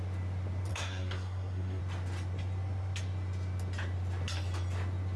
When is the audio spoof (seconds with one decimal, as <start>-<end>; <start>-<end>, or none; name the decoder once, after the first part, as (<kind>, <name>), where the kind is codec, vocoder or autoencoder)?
0.7-1.8 (codec, SNAC)